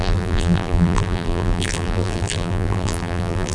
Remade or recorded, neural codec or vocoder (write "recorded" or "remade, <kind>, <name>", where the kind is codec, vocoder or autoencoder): remade, vocoder, BigVGAN v2